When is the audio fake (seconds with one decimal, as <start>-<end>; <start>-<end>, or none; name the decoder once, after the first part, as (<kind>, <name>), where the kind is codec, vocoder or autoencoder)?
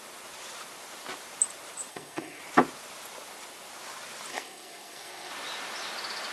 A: 1.9-2.4 (codec, SNAC); 4.3-5.3